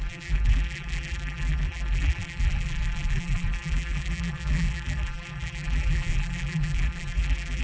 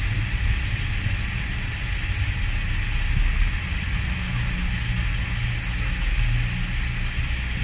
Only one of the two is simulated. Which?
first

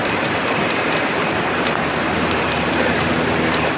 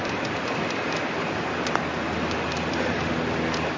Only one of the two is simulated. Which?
first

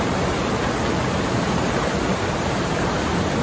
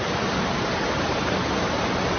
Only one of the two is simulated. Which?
first